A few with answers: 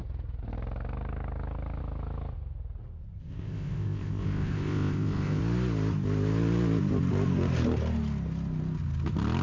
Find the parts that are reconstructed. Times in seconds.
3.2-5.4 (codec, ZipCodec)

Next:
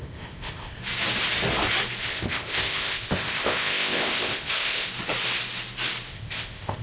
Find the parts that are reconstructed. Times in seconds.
0.0-0.8 (codec, ZipCodec); 2.0-4.9; 6.1-6.8

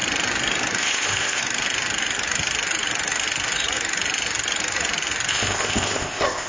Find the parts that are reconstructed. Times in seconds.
0.8-1.4 (codec, ZipCodec); 5.3-6.5

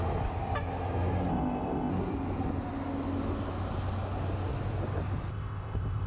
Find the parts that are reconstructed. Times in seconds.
1.3-1.9 (codec, ZipCodec); 5.3-6.1

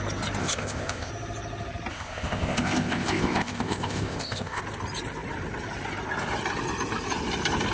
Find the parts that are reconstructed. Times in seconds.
0.4-1.1 (codec, ZipCodec); 1.9-4.6

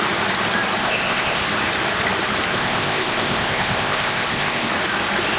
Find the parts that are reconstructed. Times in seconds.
0.8-1.4 (codec, ZipCodec); 2.5-4.7

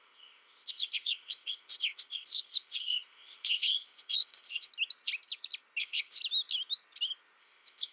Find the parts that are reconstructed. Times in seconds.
0.0-4.7 (codec, ZipCodec); 5.8-6.2; 7.4-7.9